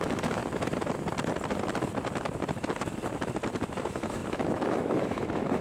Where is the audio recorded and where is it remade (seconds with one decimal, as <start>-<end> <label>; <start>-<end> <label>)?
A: 0.0-0.4 remade; 0.4-3.8 recorded; 3.8-5.6 remade